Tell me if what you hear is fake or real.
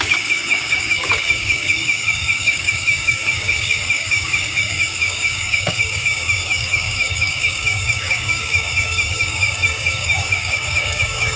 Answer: fake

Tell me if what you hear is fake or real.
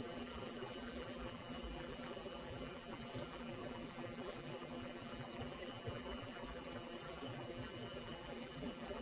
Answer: fake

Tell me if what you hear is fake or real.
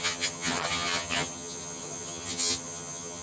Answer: fake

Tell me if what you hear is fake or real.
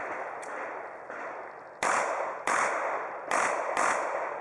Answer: real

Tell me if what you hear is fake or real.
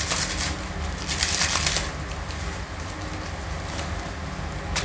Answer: real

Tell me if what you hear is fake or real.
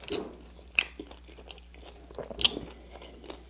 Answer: real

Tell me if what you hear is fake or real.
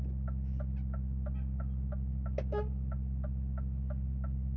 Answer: real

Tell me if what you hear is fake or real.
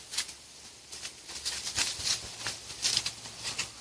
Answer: real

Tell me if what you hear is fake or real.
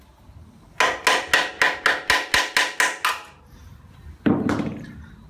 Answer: real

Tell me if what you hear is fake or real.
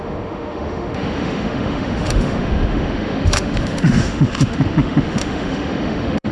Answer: fake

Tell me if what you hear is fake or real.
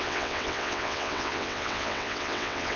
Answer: fake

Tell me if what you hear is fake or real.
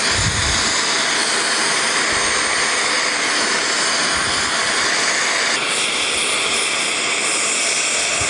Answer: real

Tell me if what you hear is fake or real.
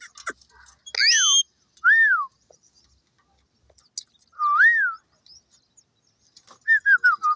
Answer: real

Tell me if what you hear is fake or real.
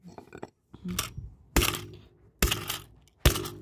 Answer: real